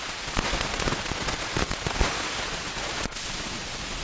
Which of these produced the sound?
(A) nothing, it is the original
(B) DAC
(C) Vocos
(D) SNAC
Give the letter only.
C